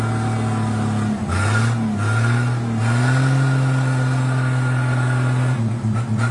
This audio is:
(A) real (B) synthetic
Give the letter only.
A